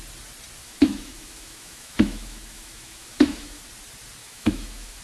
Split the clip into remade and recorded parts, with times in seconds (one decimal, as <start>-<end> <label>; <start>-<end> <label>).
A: 0.0-0.6 recorded; 0.6-3.6 remade; 3.6-4.2 recorded; 4.2-5.0 remade

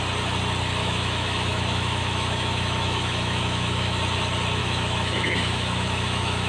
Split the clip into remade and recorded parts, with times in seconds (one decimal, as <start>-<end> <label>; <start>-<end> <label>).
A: 0.0-0.8 recorded; 0.8-4.0 remade; 4.0-4.6 recorded; 4.6-6.5 remade

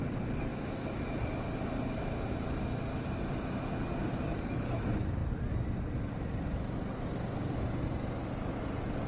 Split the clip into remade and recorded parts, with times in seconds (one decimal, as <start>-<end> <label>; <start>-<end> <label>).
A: 0.0-0.5 recorded; 0.5-1.4 remade; 1.4-9.1 recorded

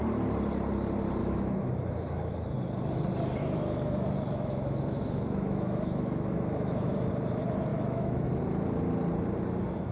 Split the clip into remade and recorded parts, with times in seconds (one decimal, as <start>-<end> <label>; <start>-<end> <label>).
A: 0.0-1.2 recorded; 1.2-2.5 remade; 2.5-3.4 recorded; 3.4-7.1 remade; 7.1-7.7 recorded; 7.7-8.3 remade; 8.3-9.9 recorded

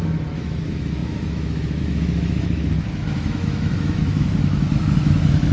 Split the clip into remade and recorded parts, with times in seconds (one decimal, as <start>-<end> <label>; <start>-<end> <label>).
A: 0.0-5.5 remade

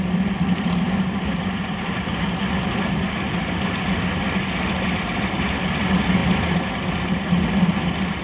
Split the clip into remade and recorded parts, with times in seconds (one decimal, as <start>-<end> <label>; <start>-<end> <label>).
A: 0.0-8.2 recorded

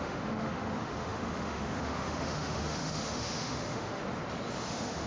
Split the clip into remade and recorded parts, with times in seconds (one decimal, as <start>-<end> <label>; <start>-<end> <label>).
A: 0.0-4.0 remade; 4.0-4.6 recorded; 4.6-5.1 remade